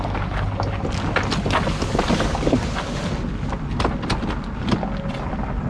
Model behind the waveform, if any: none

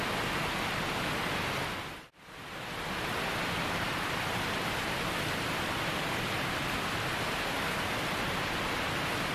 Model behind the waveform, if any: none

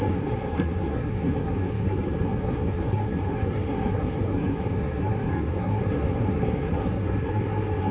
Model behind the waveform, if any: codec, SNAC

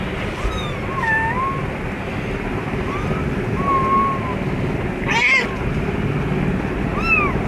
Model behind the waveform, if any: none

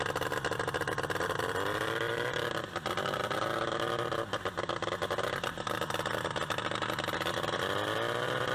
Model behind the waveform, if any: none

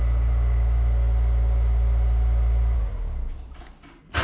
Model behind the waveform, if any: none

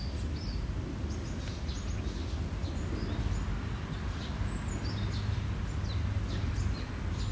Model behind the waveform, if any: none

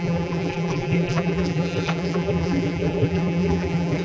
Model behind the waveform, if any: vocoder, BigVGAN v2